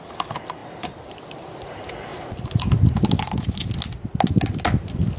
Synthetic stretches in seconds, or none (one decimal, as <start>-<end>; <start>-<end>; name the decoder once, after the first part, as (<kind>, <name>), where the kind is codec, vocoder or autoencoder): none